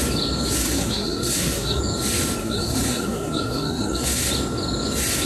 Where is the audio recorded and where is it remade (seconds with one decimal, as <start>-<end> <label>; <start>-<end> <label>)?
0.0-0.6 recorded; 0.6-1.8 remade; 1.8-2.4 recorded; 2.4-4.3 remade; 4.3-5.3 recorded